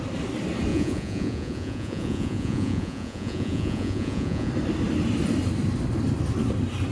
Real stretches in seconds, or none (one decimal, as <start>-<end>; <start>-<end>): 0.0-0.7; 4.5-6.9